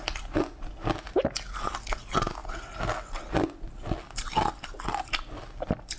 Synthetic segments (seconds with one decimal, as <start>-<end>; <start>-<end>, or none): none